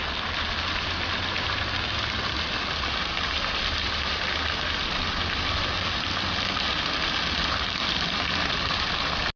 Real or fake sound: real